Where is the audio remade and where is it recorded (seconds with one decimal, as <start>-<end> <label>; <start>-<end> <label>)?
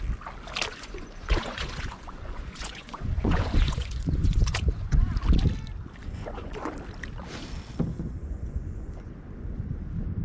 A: 0.0-0.7 recorded; 0.7-5.1 remade; 5.1-6.0 recorded; 6.0-6.7 remade; 6.7-7.9 recorded; 7.9-9.1 remade; 9.1-10.2 recorded